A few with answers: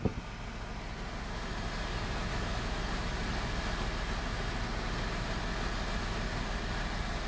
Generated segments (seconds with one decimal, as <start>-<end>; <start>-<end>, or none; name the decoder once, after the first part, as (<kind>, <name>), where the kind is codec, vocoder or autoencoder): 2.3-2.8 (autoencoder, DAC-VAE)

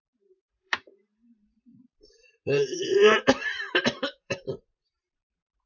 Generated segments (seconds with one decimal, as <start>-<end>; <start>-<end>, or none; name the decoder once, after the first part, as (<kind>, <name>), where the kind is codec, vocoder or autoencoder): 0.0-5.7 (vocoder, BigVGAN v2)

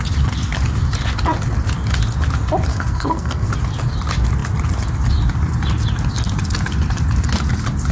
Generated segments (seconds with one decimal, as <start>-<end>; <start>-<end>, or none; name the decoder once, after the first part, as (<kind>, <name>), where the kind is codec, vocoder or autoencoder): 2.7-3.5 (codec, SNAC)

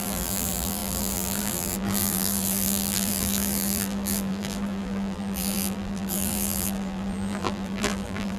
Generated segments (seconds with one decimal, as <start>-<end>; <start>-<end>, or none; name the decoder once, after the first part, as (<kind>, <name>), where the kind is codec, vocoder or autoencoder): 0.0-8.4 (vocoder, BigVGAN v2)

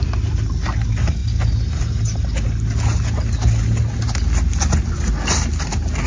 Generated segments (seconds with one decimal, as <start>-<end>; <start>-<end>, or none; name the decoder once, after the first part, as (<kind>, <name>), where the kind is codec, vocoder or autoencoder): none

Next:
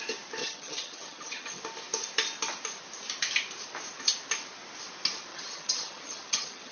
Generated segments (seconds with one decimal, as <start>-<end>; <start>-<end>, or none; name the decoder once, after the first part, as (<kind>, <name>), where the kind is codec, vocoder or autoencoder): 0.4-1.6 (vocoder, HiFi-GAN); 5.3-6.7

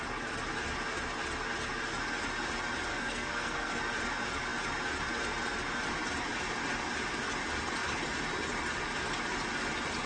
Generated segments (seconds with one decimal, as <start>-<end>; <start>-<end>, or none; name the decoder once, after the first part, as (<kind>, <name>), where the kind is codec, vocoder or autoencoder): 2.9-3.8 (codec, SNAC)

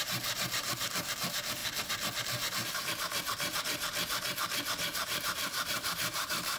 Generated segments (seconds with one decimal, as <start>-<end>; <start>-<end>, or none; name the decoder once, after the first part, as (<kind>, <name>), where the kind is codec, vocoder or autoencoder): 0.0-6.6 (vocoder, BigVGAN v2)